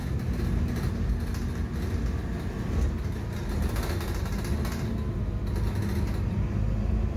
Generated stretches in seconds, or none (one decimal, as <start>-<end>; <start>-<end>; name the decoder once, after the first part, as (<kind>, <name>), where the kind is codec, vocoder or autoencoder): none